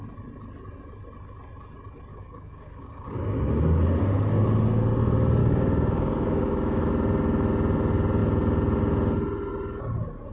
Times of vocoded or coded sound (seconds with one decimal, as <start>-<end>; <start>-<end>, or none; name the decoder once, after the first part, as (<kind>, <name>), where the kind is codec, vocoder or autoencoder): 2.1-3.2 (codec, DAC); 5.4-6.9

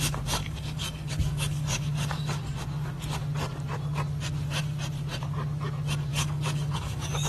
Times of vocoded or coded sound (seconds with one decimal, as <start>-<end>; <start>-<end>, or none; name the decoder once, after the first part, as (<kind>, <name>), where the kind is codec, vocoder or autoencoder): 0.4-2.4 (codec, DAC); 6.1-7.3

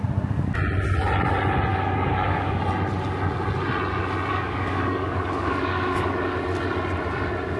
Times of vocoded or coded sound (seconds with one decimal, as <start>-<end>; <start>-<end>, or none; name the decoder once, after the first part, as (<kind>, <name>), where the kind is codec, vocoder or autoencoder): 1.7-2.6 (codec, DAC); 4.3-6.4

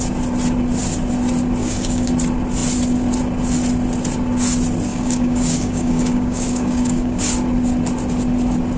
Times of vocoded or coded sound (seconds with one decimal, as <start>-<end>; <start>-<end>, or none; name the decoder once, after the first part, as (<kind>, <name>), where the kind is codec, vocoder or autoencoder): 1.6-2.1 (codec, DAC); 4.9-7.2

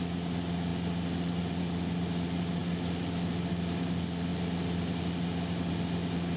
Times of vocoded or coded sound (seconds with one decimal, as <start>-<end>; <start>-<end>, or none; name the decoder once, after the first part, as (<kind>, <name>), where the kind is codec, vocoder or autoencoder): none